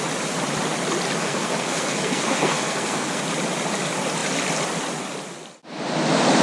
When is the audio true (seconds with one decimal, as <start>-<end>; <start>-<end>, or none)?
0.0-1.2; 3.2-6.4

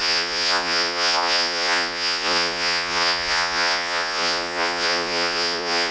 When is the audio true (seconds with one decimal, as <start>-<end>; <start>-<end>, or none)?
none

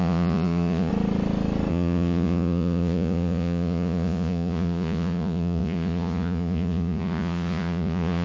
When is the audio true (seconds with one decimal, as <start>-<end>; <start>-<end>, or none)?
0.9-1.7

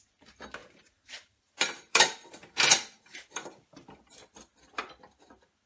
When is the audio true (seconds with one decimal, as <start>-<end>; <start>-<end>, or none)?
0.0-0.6; 4.0-5.7

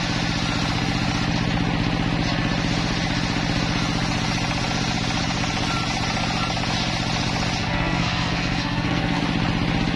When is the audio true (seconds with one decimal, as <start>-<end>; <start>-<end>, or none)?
0.0-7.6; 9.2-10.0